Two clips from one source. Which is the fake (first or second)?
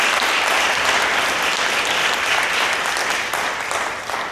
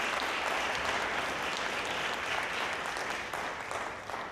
first